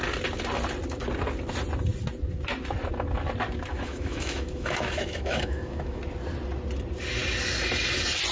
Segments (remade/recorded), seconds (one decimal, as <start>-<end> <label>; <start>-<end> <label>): 0.0-3.7 recorded; 3.7-6.0 remade; 6.0-8.3 recorded